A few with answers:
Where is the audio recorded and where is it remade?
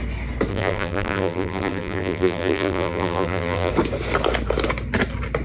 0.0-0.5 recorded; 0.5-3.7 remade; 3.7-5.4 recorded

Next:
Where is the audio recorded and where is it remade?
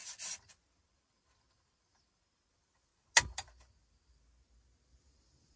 0.0-0.8 recorded; 0.8-2.9 remade; 2.9-5.1 recorded; 5.1-5.6 remade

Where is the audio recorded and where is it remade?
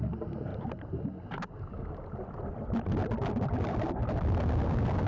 0.0-0.5 remade; 0.5-3.6 recorded; 3.6-4.0 remade; 4.0-5.1 recorded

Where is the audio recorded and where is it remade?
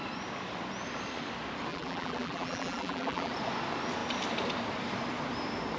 0.0-1.7 recorded; 1.7-3.3 remade; 3.3-5.8 recorded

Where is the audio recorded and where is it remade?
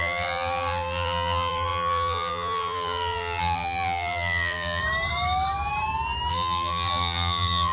0.0-4.8 remade; 4.8-6.3 recorded; 6.3-7.7 remade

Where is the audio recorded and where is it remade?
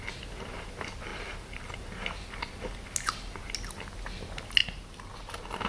0.0-1.1 recorded; 1.1-2.3 remade; 2.3-5.7 recorded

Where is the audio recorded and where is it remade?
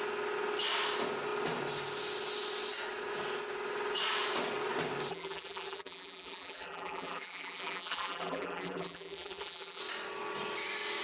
0.0-5.1 recorded; 5.1-9.8 remade; 9.8-11.0 recorded